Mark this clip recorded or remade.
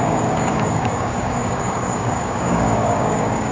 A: remade